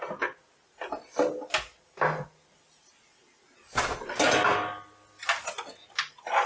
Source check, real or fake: real